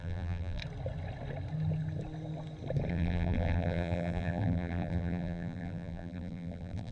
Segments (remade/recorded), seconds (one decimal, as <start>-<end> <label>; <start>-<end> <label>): 0.0-0.6 remade; 0.6-2.9 recorded; 2.9-6.9 remade

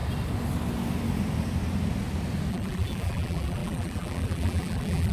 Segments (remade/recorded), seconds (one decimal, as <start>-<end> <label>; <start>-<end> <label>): 0.0-2.5 recorded; 2.5-5.1 remade

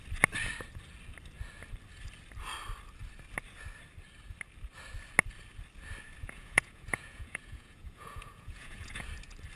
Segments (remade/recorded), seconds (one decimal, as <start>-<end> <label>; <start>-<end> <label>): 0.0-6.2 recorded; 6.2-9.0 remade; 9.0-9.6 recorded

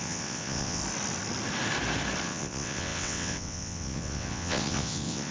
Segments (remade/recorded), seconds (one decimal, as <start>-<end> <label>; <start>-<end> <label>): 0.0-0.8 remade; 0.8-2.2 recorded; 2.2-5.3 remade

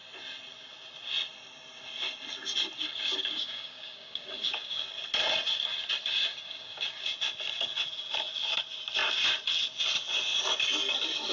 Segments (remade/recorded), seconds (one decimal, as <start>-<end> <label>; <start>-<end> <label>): 0.0-3.4 recorded; 3.4-4.9 remade; 4.9-6.3 recorded; 6.3-7.0 remade; 7.0-11.3 recorded